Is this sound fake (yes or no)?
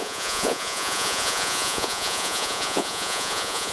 yes